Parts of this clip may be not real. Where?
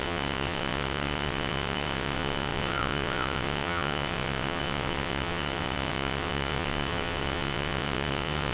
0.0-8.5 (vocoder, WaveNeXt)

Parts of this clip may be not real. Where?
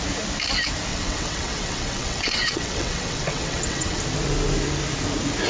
0.9-4.0 (vocoder, WaveNeXt)